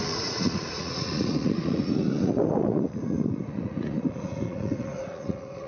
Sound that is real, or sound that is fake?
fake